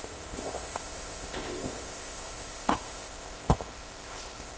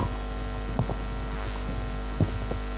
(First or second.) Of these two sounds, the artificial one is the first